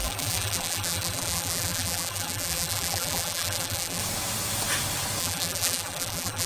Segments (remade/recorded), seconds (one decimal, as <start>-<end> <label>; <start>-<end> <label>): 0.0-4.0 remade; 4.0-5.2 recorded; 5.2-6.5 remade